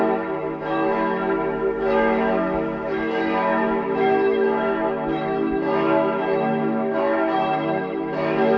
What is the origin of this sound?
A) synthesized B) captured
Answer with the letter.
A